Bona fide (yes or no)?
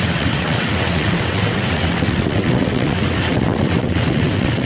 no